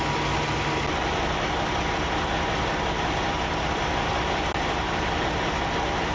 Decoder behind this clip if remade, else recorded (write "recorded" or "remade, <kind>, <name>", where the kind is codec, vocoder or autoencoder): recorded